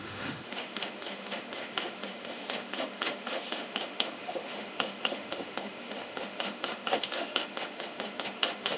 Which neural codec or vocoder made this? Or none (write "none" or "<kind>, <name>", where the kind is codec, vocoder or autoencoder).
autoencoder, DAC-VAE